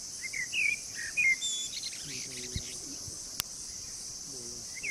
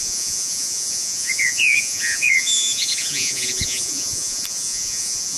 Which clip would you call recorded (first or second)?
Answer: first